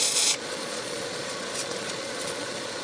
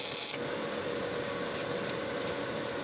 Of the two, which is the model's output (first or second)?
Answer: first